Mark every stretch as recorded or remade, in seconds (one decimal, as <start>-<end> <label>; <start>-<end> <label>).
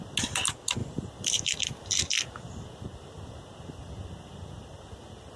0.0-0.8 recorded; 0.8-2.0 remade; 2.0-5.4 recorded